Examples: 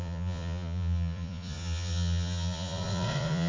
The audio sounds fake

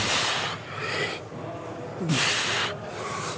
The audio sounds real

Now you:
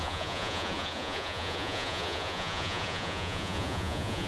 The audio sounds fake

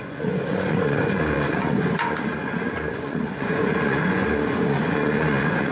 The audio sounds fake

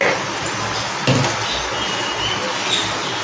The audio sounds real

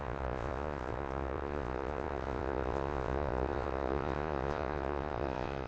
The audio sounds fake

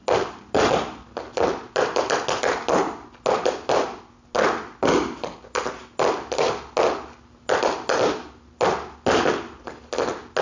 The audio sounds real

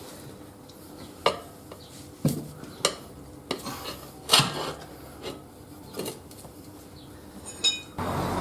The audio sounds real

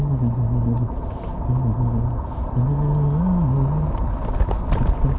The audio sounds real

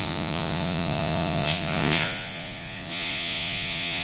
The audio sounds fake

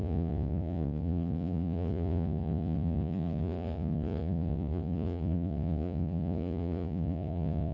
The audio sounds fake